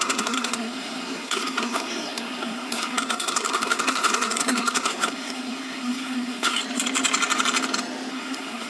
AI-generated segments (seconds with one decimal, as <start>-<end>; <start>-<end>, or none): 0.0-6.6; 8.1-8.7